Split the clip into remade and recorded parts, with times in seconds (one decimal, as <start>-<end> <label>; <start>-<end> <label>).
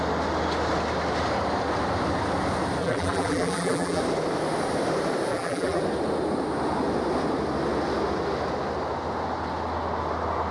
0.0-2.8 recorded; 2.8-4.0 remade; 4.0-5.3 recorded; 5.3-5.8 remade; 5.8-10.5 recorded